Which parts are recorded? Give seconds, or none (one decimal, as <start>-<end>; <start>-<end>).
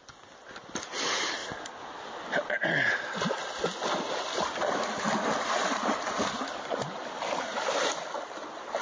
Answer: 0.0-8.8